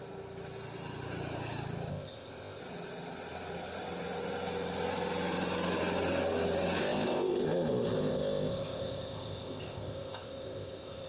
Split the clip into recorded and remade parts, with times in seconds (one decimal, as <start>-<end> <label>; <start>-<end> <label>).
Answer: 0.0-1.9 recorded; 1.9-2.6 remade; 2.6-6.8 recorded; 6.8-11.1 remade